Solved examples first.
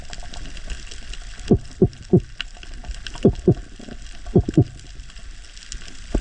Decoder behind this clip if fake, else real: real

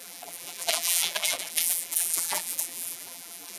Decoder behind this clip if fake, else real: fake, vocoder, BigVGAN v2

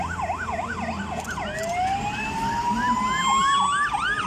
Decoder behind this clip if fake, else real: real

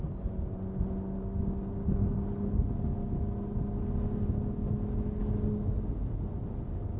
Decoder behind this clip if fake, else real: real